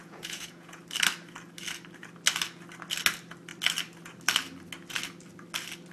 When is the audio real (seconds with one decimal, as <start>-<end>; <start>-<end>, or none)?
0.8-5.9